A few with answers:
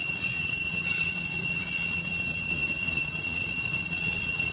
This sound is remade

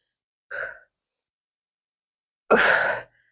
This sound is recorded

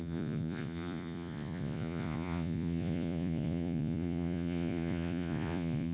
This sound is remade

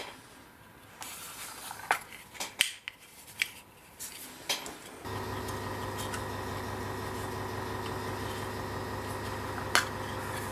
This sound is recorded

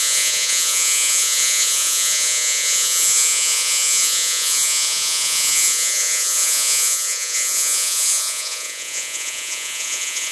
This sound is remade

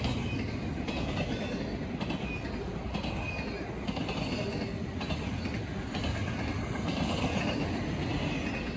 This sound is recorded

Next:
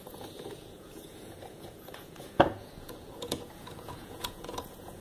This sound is remade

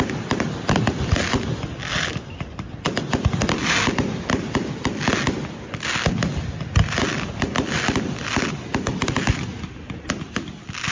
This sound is recorded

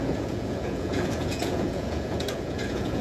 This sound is remade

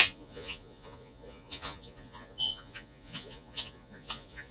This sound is remade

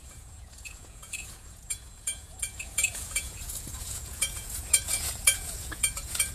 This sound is remade